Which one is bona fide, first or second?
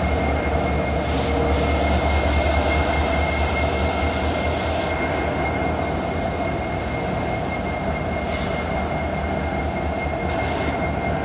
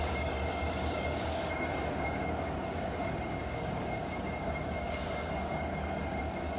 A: first